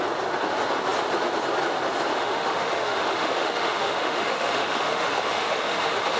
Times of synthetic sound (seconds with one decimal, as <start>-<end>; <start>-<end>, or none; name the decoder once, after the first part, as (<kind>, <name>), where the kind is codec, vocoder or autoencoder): 2.2-6.2 (autoencoder, DAC-VAE)